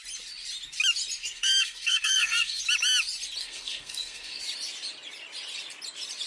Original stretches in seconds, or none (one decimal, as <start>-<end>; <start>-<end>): 0.0-1.2; 2.6-3.4; 4.4-6.3